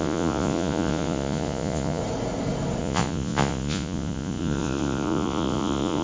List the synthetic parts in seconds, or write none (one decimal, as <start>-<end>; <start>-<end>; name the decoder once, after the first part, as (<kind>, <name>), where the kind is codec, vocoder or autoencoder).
0.0-2.0 (vocoder, Vocos); 2.8-6.0